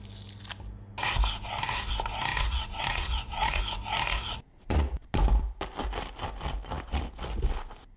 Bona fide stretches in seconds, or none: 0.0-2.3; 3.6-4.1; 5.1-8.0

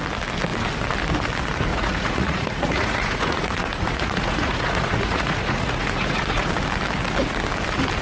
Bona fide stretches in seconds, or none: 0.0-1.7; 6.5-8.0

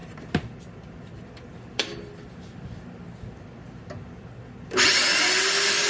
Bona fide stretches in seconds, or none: 0.0-5.9